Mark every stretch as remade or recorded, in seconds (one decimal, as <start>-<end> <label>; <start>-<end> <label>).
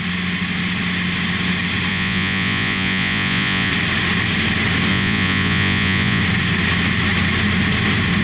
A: 0.0-1.9 recorded; 1.9-3.7 remade; 3.7-4.9 recorded; 4.9-6.2 remade; 6.2-8.2 recorded